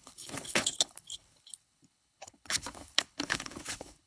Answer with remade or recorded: remade